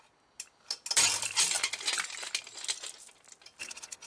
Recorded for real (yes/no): yes